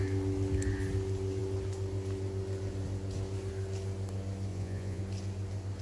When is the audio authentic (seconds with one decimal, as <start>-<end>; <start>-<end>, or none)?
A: 0.0-4.5; 5.0-5.8